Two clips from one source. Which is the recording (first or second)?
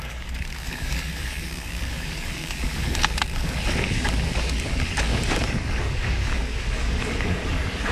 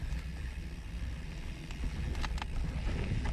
second